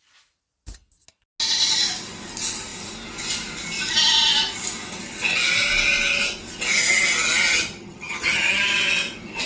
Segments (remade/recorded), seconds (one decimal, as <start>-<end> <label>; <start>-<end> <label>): 0.0-7.5 recorded; 7.5-8.6 remade; 8.6-9.5 recorded